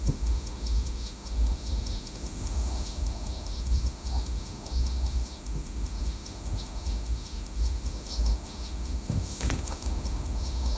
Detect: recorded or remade remade